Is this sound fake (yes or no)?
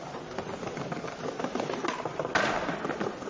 no